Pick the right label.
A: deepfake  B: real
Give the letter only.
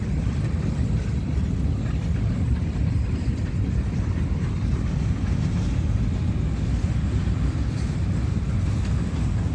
B